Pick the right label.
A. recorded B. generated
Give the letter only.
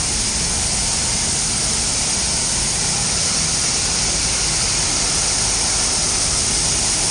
A